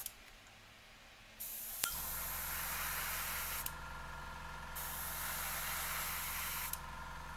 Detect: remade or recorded recorded